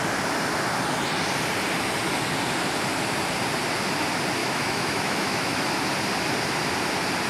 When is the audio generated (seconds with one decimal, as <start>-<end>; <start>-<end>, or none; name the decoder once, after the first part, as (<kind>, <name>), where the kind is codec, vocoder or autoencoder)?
4.4-5.7 (autoencoder, DAC-VAE)